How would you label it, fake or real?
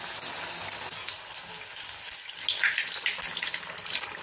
real